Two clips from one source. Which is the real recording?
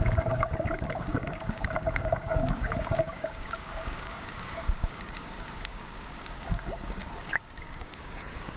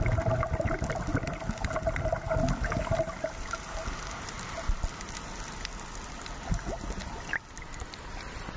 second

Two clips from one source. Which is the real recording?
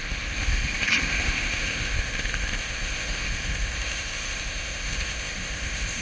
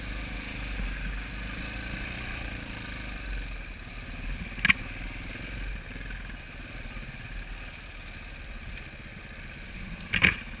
second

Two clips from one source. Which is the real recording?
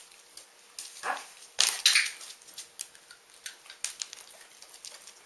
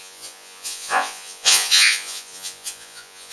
first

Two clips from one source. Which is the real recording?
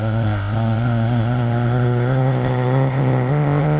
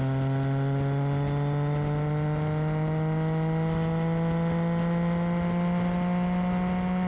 second